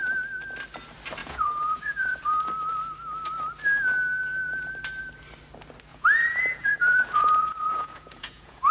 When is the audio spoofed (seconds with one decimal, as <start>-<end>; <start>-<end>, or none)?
1.2-2.4; 5.9-8.7